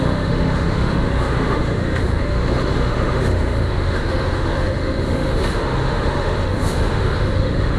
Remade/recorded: remade